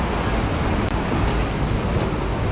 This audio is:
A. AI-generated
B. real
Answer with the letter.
B